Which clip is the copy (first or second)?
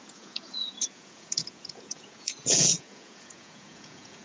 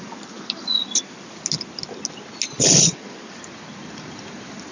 first